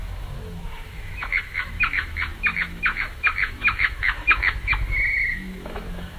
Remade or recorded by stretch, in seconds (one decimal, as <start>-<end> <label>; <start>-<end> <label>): 0.0-6.2 remade